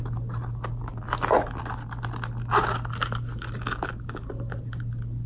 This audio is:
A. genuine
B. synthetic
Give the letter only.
A